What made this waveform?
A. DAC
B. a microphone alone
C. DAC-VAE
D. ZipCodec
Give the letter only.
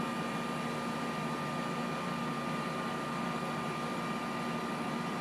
B